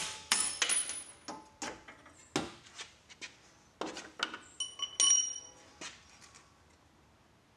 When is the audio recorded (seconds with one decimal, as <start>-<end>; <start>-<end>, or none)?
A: 0.5-7.6